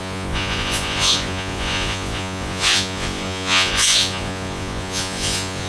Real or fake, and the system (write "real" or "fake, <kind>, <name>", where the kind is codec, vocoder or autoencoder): fake, vocoder, Vocos